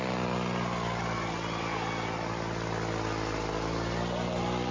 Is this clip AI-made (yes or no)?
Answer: no